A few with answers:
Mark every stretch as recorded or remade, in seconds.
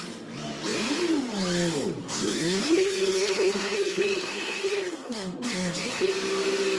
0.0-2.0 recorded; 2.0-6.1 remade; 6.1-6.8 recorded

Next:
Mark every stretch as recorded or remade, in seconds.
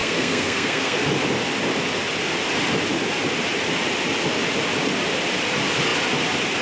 0.0-1.1 remade; 1.1-6.6 recorded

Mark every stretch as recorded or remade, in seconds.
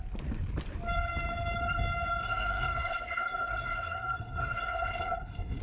0.0-2.2 recorded; 2.2-5.6 remade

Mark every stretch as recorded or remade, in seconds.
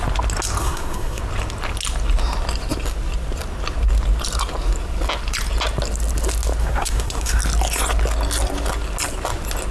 0.0-0.6 recorded; 0.6-1.2 remade; 1.2-6.6 recorded; 6.6-7.4 remade; 7.4-9.7 recorded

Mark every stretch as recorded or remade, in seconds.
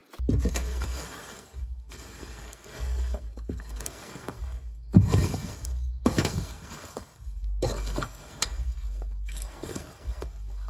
0.0-0.5 recorded; 0.5-10.7 remade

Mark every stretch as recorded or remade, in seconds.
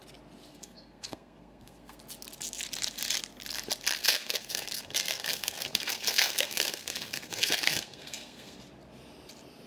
0.0-0.5 recorded; 0.5-2.0 remade; 2.0-4.0 recorded; 4.0-8.6 remade; 8.6-9.7 recorded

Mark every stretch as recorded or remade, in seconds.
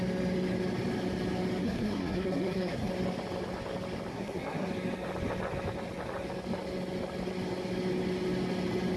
0.0-1.6 recorded; 1.6-2.9 remade; 2.9-4.1 recorded; 4.1-4.7 remade; 4.7-9.0 recorded